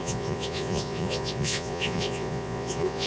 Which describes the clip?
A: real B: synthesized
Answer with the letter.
B